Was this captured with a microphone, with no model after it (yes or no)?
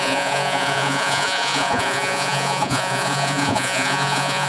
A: no